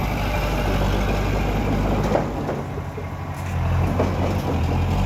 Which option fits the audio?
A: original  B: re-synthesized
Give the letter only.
A